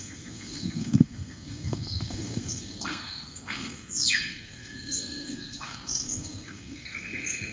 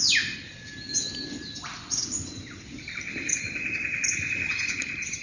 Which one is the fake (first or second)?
first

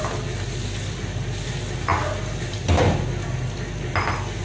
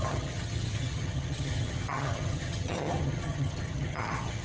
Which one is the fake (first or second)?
second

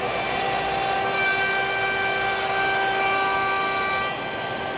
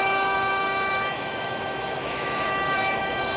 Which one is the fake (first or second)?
second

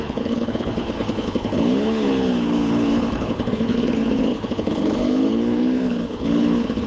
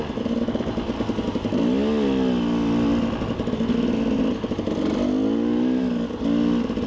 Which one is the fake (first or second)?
first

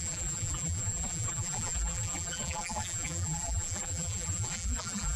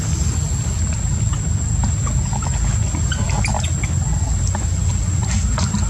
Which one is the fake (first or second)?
first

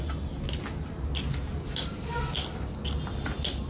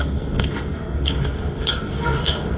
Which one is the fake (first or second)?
second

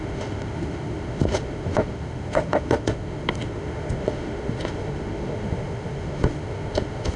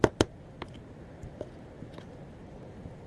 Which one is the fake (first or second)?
first